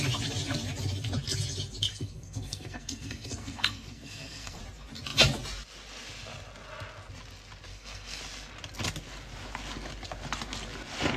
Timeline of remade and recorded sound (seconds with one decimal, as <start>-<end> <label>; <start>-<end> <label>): 0.0-1.9 recorded; 1.9-4.6 remade; 4.6-7.7 recorded; 7.7-8.2 remade; 8.2-11.2 recorded